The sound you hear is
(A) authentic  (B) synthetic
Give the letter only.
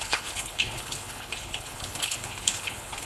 B